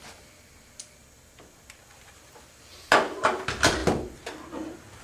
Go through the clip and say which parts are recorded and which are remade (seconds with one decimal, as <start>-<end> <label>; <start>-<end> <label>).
0.0-5.0 recorded